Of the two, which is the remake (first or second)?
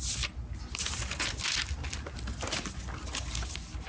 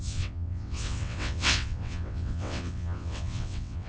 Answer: second